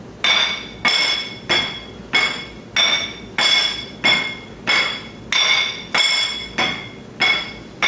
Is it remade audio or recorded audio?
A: recorded